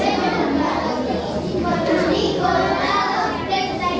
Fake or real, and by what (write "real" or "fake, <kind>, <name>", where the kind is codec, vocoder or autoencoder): real